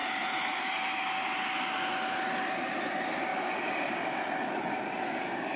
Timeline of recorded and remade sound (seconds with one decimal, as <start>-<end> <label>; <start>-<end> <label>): 0.0-5.6 recorded